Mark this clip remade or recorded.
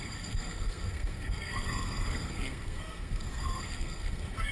remade